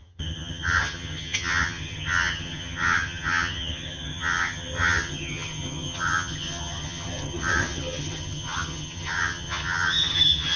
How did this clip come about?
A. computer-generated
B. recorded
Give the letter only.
A